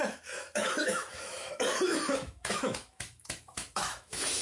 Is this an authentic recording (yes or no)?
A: no